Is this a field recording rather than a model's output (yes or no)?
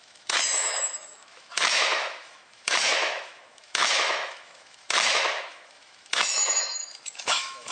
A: no